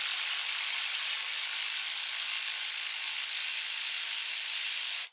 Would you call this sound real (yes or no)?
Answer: yes